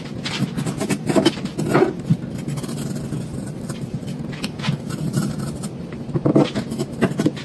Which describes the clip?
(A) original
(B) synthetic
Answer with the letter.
A